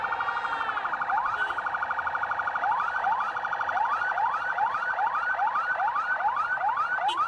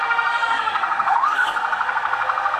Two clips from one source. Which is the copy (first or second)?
second